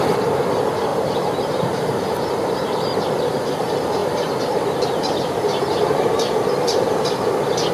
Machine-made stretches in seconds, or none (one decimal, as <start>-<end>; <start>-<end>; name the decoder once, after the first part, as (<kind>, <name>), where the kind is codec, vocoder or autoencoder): 0.9-2.2 (vocoder, BigVGAN v2); 4.0-7.3